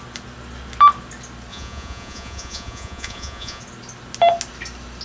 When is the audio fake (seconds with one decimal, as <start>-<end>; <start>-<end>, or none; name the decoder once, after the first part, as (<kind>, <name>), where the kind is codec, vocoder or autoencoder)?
1.5-3.6 (vocoder, Vocos)